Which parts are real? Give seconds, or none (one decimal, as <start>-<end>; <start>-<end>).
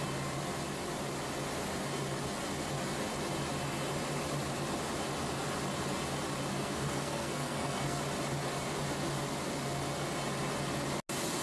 0.0-6.5; 8.0-11.4